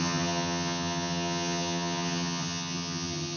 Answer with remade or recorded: remade